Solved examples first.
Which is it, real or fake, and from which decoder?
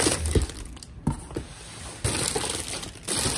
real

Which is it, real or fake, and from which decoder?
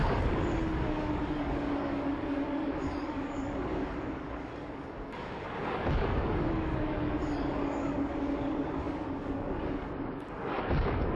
fake, codec, DAC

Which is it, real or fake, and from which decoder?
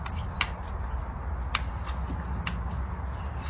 real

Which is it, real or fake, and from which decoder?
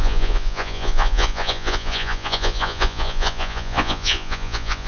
fake, vocoder, Vocos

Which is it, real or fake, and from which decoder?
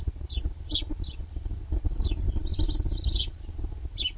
real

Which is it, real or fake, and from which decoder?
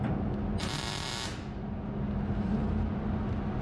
real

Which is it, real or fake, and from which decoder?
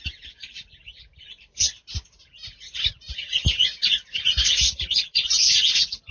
fake, vocoder, BigVGAN v2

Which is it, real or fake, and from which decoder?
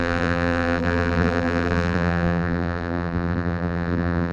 fake, vocoder, BigVGAN v2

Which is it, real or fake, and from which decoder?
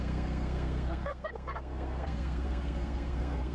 fake, codec, SNAC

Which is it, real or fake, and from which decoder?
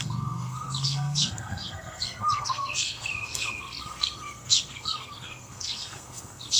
fake, codec, SNAC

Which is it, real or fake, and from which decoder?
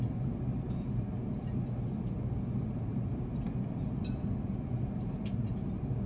real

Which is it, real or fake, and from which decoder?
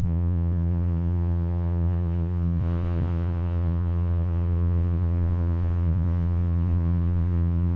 fake, vocoder, Vocos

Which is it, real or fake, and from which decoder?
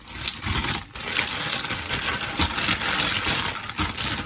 real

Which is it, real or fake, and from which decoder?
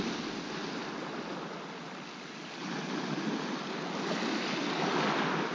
real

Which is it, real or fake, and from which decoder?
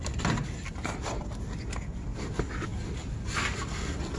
real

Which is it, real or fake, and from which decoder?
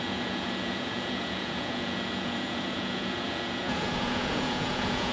fake, vocoder, Vocos